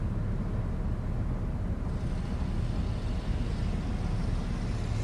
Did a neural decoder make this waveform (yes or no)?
no